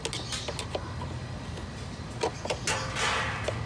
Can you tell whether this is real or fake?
real